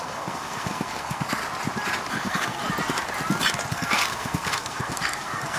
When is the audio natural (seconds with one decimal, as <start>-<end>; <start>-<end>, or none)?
1.4-2.1; 2.6-3.7